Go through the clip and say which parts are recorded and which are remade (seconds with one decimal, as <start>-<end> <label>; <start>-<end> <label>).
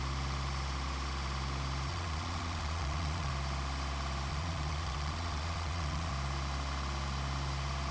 0.0-1.9 recorded; 1.9-3.3 remade; 3.3-4.3 recorded; 4.3-6.1 remade; 6.1-7.9 recorded